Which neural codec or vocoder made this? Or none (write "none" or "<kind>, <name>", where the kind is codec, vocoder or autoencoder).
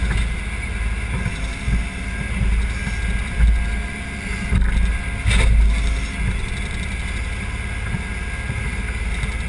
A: none